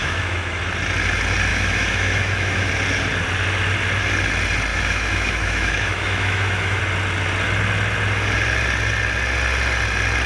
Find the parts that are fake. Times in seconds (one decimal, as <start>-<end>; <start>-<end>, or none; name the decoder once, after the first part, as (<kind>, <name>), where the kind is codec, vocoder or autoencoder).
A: 0.0-0.6 (autoencoder, DAC-VAE); 1.5-2.7; 4.7-6.8